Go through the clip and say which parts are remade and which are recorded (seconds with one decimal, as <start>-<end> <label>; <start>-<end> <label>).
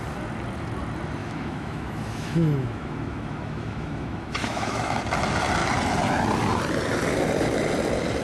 0.0-1.2 recorded; 1.2-5.0 remade; 5.0-8.2 recorded